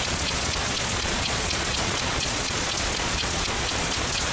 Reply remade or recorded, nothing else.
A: remade